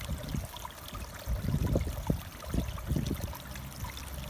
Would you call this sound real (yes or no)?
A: yes